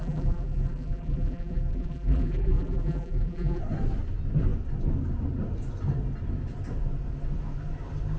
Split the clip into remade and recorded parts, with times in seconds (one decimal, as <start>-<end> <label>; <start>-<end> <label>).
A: 0.0-3.6 remade; 3.6-8.2 recorded